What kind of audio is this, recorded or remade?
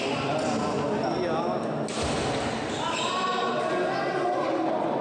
recorded